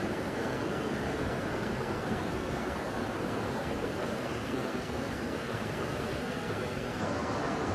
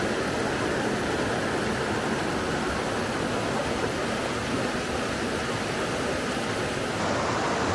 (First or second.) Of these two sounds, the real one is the second